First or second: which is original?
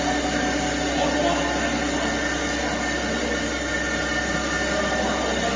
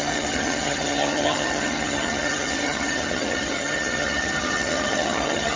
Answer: first